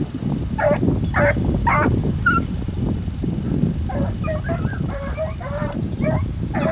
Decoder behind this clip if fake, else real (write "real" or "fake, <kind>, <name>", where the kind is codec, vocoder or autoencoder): real